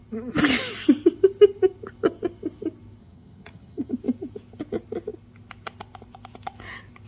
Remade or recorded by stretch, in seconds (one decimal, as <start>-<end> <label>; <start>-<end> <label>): 0.0-3.0 recorded; 3.0-3.9 remade; 3.9-7.1 recorded